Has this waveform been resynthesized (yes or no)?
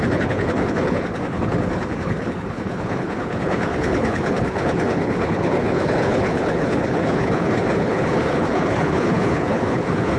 yes